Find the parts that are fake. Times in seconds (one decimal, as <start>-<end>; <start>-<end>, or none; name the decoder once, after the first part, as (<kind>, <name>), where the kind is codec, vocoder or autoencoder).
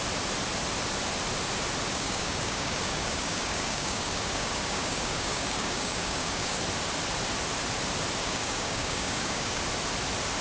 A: 1.9-6.6 (codec, DAC); 8.2-9.6